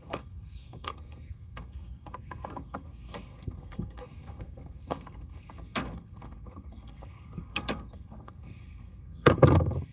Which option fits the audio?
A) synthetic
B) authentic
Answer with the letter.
A